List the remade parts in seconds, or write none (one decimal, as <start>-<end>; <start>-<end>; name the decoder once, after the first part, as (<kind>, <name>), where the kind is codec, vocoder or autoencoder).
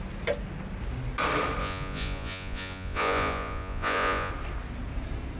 1.6-4.3 (vocoder, Vocos)